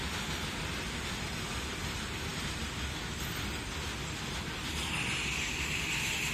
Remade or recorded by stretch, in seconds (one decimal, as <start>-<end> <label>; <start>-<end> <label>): 0.0-6.3 recorded